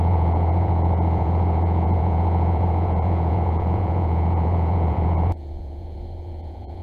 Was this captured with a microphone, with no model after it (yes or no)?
no